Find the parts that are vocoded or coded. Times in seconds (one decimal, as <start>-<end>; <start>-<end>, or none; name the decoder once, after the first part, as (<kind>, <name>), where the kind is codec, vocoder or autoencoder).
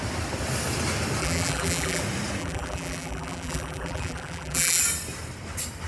1.2-2.0 (vocoder, BigVGAN v2); 2.4-4.8